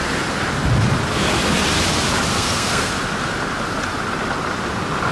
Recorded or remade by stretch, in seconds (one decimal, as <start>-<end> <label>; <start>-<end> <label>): 0.0-2.3 recorded; 2.3-2.9 remade; 2.9-5.1 recorded